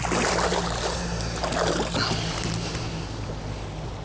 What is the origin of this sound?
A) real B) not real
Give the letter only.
A